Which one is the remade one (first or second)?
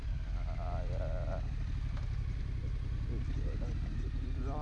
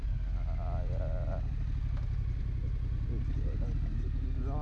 first